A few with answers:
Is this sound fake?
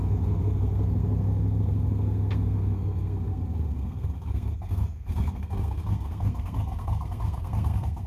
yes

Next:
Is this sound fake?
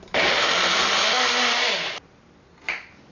no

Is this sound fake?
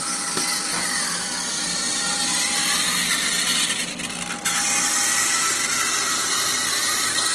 no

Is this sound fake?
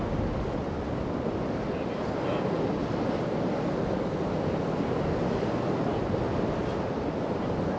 no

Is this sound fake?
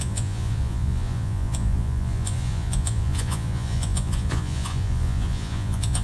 yes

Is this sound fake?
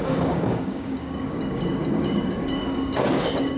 yes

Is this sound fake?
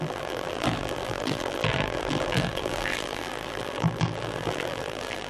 yes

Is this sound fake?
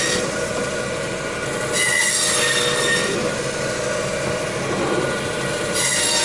no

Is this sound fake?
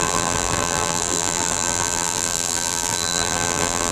yes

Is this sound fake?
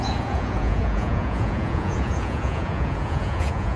yes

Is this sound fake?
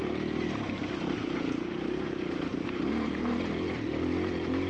no